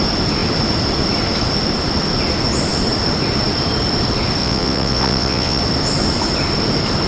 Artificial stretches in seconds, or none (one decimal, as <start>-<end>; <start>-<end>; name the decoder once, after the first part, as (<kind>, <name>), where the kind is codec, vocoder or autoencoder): 4.4-5.6 (vocoder, WaveNeXt)